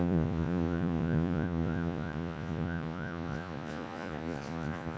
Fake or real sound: fake